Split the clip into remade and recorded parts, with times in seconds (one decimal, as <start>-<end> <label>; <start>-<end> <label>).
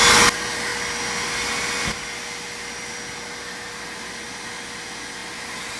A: 0.0-5.8 recorded